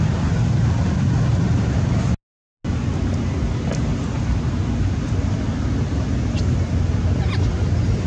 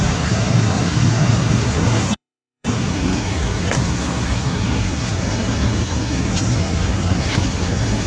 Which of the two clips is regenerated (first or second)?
second